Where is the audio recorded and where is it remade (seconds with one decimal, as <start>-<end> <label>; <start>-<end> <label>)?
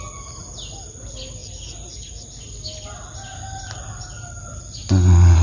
0.0-5.4 recorded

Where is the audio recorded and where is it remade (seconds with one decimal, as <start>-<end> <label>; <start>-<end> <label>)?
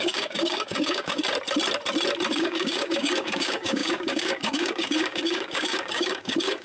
0.0-1.2 remade; 1.2-2.3 recorded; 2.3-6.6 remade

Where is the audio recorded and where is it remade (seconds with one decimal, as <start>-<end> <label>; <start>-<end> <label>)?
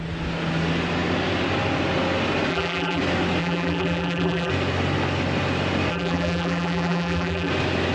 0.0-2.5 recorded; 2.5-3.0 remade; 3.0-3.4 recorded; 3.4-4.5 remade; 4.5-5.9 recorded; 5.9-7.5 remade; 7.5-7.9 recorded